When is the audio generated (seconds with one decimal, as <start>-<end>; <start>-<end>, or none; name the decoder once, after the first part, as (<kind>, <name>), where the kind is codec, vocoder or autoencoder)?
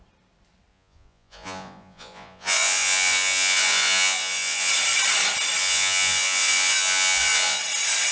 0.7-4.7 (vocoder, Vocos); 5.6-7.6